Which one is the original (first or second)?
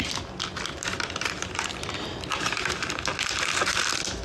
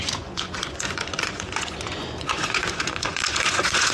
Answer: first